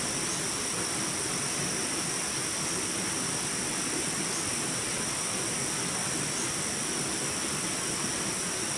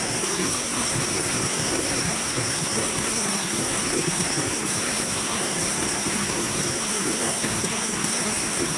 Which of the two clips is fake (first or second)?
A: second